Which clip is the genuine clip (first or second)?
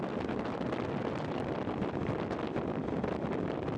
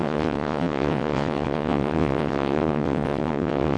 first